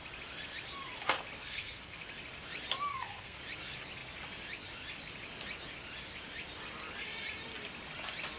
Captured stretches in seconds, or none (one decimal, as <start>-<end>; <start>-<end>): 0.0-1.4; 2.0-2.9; 3.4-8.4